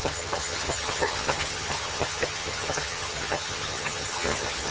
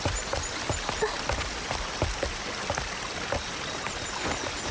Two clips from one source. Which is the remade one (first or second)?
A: first